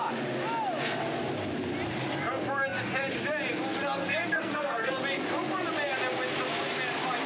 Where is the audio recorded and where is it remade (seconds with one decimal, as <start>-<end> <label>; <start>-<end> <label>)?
0.0-4.0 recorded; 4.0-4.9 remade; 4.9-7.3 recorded